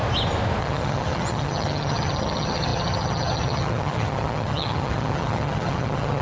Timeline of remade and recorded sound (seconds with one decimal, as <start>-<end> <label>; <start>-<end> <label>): 0.0-0.6 recorded; 0.6-6.2 remade